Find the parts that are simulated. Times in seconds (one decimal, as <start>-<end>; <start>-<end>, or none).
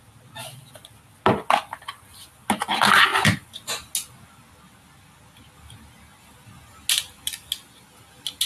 none